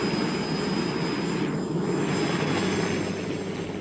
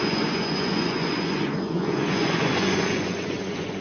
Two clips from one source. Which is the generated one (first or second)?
second